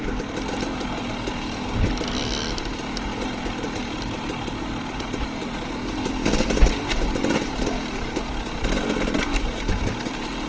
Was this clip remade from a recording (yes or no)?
no